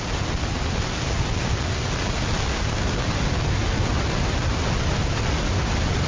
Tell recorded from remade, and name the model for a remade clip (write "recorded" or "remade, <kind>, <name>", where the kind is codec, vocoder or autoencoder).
recorded